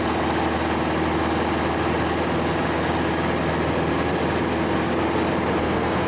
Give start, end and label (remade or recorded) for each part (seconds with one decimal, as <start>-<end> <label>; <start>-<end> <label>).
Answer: 0.0-5.6 recorded; 5.6-6.1 remade